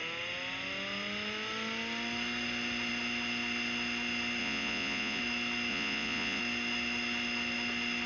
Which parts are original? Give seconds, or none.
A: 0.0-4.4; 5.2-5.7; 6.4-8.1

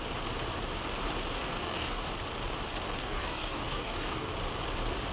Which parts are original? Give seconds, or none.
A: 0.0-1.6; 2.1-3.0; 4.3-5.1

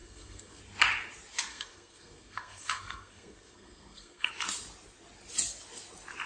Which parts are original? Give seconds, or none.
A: 0.6-1.5; 4.3-6.3

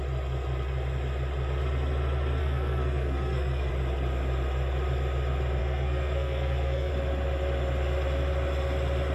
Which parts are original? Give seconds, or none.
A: 0.0-2.4; 3.7-5.6; 6.9-9.1

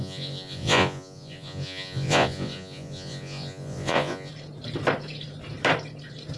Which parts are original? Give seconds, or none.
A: 4.3-6.4